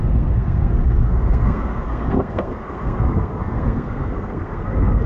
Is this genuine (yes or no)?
no